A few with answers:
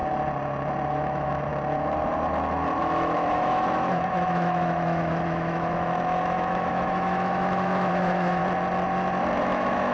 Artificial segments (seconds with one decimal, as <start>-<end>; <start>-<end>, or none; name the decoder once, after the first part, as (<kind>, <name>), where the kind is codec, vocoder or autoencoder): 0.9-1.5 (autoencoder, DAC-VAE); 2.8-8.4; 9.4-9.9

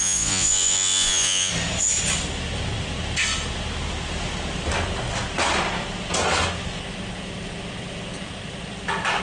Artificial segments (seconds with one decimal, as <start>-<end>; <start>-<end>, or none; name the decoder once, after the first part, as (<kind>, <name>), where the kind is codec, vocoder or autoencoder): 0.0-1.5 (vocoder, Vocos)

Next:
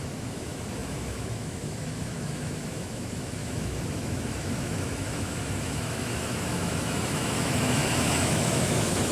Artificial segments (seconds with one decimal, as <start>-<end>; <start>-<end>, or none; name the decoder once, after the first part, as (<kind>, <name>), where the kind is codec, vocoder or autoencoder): 0.0-9.1 (autoencoder, DAC-VAE)